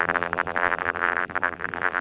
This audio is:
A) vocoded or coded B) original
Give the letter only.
A